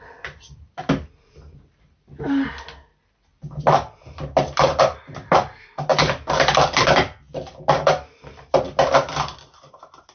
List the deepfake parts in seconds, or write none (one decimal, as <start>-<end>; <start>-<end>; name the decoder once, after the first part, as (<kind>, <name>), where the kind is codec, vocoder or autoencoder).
none